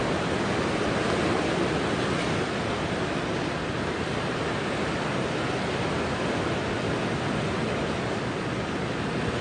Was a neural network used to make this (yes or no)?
no